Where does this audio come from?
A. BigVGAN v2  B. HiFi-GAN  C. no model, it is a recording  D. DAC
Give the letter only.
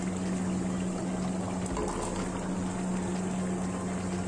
C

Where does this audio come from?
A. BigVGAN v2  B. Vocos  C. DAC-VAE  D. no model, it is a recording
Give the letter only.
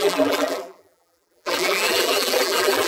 A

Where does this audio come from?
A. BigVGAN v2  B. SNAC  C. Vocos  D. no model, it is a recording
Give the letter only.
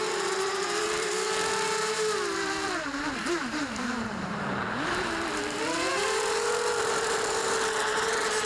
A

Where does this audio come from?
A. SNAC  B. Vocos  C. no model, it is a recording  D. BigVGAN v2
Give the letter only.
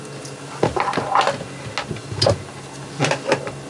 C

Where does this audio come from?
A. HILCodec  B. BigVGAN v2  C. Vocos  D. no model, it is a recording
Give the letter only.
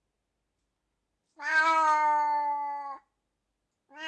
D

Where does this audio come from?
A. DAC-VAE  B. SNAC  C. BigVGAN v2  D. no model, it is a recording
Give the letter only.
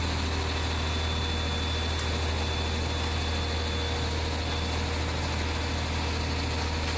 D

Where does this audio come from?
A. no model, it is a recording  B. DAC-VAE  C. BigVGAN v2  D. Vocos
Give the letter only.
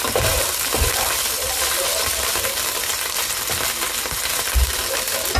C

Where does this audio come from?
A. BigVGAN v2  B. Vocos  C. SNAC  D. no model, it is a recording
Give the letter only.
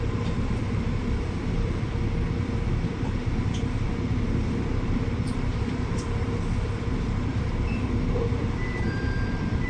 A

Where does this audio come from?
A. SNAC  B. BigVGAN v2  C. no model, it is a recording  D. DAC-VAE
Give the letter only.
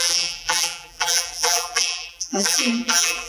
B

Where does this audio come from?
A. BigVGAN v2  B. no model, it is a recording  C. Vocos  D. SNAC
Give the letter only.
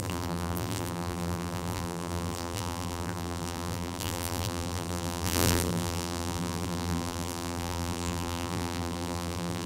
A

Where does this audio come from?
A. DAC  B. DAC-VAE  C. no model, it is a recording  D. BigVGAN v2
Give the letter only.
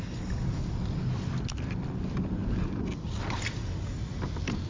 C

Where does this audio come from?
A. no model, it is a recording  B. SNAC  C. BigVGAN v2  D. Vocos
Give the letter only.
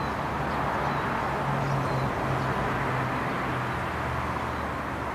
A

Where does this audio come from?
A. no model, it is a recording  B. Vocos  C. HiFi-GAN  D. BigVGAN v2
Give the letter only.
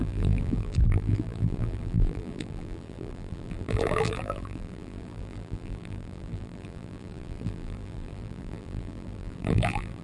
D